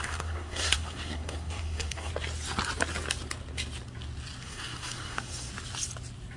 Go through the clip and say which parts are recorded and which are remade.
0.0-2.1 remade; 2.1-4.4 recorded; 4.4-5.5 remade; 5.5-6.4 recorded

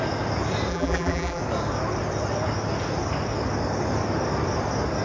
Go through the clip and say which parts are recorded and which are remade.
0.0-0.7 recorded; 0.7-1.4 remade; 1.4-5.0 recorded

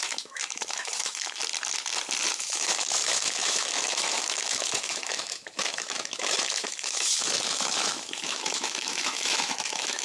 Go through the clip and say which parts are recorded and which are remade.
0.0-1.4 remade; 1.4-2.4 recorded; 2.4-10.0 remade

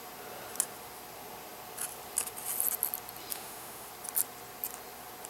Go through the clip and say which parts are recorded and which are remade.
0.0-3.3 recorded; 3.3-3.9 remade; 3.9-5.3 recorded

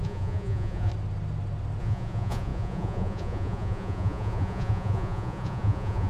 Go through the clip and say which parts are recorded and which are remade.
0.0-0.9 remade; 0.9-1.8 recorded; 1.8-6.1 remade